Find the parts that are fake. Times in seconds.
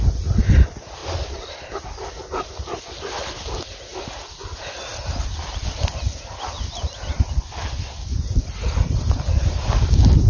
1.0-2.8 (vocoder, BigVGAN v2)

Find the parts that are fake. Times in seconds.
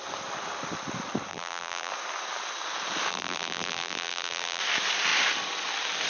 1.3-1.9 (vocoder, BigVGAN v2); 3.1-4.6